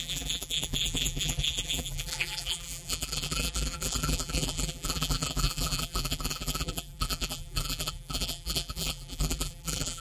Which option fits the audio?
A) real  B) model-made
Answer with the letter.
B